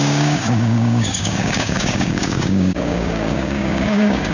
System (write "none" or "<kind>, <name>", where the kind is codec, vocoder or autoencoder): codec, DAC